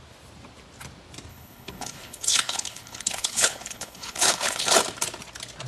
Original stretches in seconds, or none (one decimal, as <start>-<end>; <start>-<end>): 0.0-1.3; 4.7-5.7